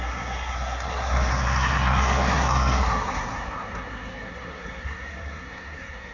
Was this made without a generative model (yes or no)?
no